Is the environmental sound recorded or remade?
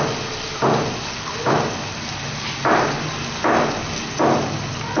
recorded